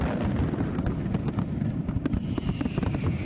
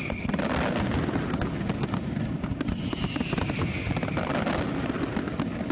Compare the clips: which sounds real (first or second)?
second